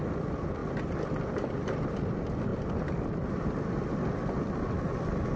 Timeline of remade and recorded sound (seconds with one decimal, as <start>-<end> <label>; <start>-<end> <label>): 0.0-5.4 recorded